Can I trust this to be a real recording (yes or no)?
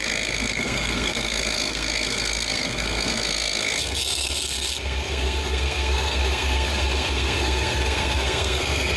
no